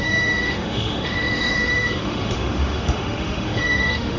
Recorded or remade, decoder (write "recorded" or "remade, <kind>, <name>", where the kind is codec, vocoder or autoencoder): remade, autoencoder, DAC-VAE